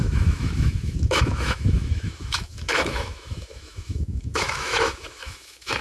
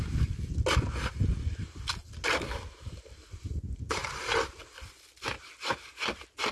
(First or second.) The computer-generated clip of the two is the first